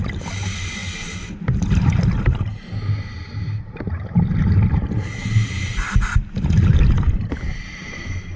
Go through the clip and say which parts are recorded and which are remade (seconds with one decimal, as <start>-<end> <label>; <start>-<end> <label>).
0.0-8.4 recorded